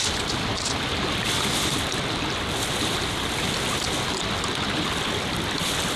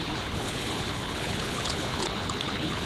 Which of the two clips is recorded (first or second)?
first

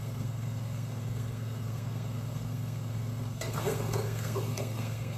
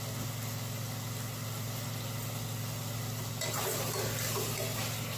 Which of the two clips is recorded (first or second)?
second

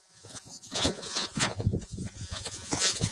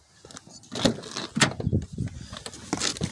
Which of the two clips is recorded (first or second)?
second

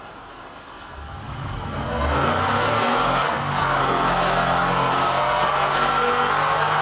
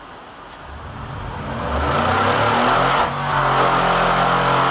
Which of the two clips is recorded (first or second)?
second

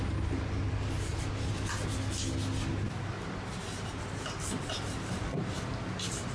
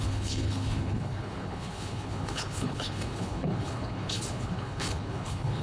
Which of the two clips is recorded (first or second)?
first